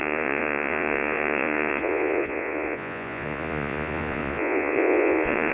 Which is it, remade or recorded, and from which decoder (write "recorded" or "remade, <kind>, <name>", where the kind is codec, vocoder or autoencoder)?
remade, vocoder, Vocos